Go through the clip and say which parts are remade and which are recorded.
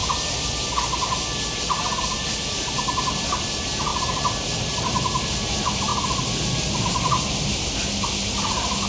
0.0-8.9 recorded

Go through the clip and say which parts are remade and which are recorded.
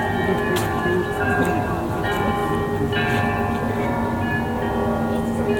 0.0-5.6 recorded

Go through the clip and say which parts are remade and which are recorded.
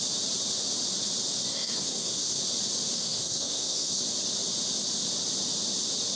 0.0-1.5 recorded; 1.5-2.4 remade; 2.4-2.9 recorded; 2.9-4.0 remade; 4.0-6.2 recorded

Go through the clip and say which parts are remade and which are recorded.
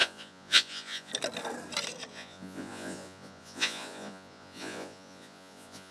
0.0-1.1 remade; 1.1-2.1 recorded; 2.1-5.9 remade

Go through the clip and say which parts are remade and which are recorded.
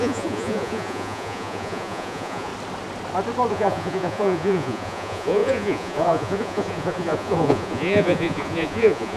0.0-2.5 remade; 2.5-3.5 recorded; 3.5-9.2 remade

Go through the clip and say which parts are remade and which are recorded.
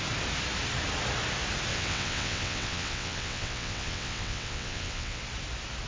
0.0-1.7 recorded; 1.7-5.2 remade; 5.2-5.9 recorded